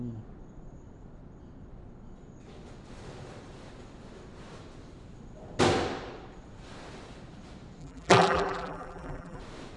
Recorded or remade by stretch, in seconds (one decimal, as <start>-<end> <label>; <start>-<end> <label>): 0.0-7.8 recorded; 7.8-9.4 remade; 9.4-9.8 recorded